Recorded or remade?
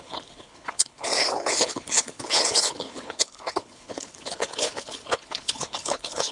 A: remade